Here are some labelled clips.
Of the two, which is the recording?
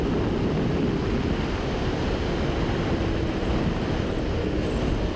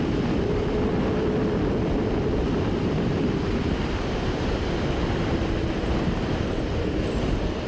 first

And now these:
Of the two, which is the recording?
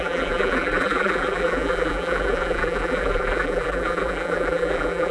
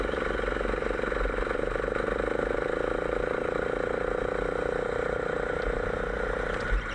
second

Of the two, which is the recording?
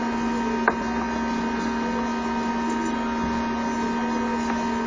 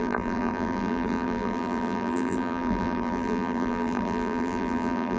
first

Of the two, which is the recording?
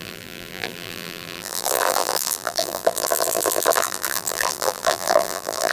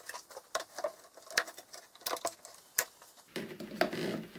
second